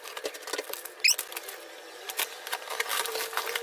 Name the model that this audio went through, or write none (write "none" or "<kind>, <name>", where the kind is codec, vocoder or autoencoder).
none